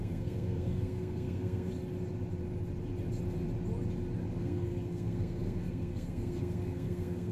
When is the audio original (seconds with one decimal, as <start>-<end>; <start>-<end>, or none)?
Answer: 1.7-4.4